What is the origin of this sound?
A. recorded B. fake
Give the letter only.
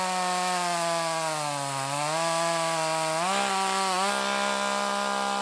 A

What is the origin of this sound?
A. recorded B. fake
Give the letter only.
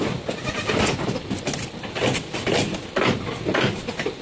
A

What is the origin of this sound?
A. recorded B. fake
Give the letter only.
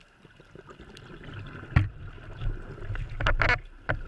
A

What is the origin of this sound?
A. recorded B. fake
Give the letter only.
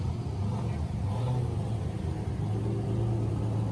A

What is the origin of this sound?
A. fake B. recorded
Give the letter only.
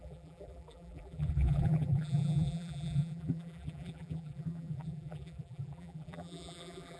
A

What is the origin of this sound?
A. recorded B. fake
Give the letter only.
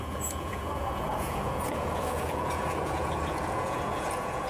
B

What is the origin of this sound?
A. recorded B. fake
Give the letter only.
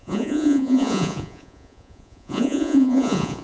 B